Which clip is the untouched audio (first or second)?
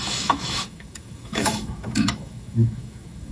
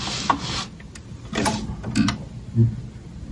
second